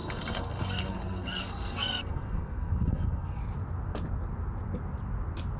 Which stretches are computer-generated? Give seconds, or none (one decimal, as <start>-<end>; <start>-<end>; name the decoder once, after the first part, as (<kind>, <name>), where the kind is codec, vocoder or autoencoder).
0.0-3.4 (codec, SNAC)